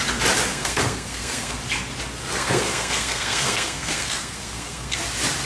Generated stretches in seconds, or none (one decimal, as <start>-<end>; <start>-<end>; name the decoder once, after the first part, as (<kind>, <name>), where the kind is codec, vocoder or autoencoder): 0.5-1.6 (codec, SNAC); 2.2-5.0